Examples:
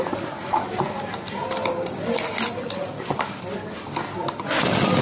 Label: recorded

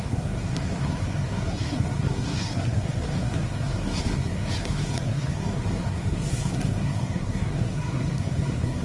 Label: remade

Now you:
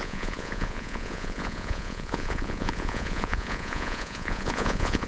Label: remade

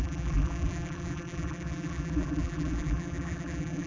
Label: remade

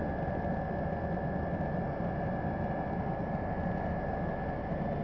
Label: recorded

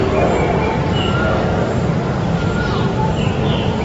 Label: recorded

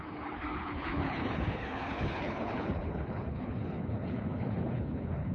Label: remade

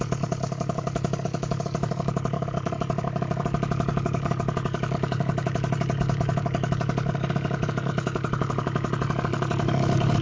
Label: remade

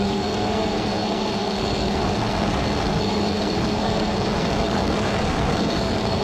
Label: remade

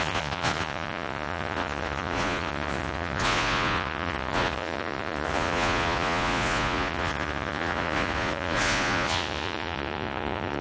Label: remade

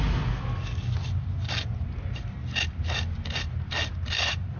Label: recorded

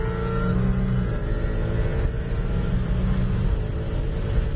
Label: recorded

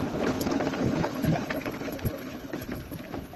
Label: remade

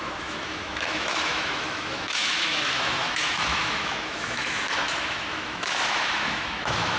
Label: remade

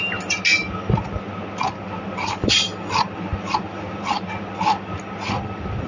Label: recorded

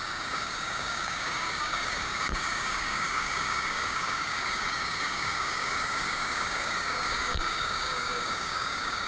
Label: remade